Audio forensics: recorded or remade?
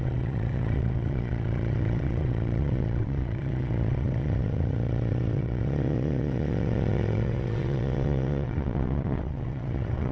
remade